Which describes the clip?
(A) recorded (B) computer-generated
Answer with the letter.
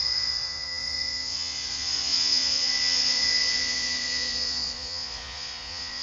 B